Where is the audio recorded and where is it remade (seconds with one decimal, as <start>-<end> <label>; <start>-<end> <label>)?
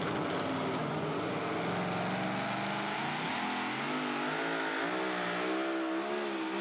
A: 0.0-0.8 recorded; 0.8-1.4 remade; 1.4-6.6 recorded